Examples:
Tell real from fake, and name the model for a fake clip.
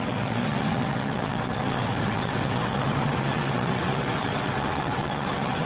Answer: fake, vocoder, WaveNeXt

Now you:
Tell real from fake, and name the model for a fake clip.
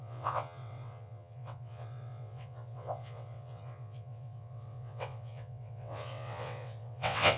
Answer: fake, vocoder, WaveNeXt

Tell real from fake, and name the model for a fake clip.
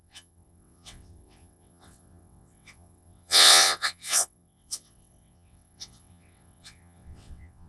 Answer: fake, vocoder, WaveNeXt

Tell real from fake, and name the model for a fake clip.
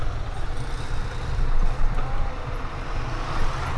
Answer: real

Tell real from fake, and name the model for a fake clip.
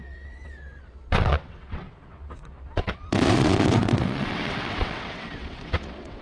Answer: fake, vocoder, WaveNeXt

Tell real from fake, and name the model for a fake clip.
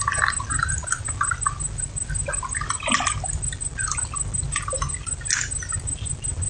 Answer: real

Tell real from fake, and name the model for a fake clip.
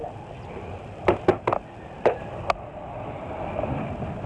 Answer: real